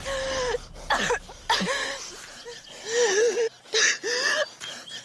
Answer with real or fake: real